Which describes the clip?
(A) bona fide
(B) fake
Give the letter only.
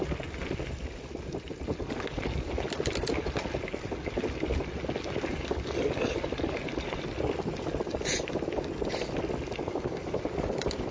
A